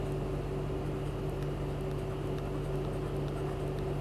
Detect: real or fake real